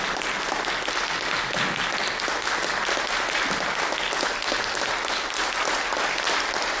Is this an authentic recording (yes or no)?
yes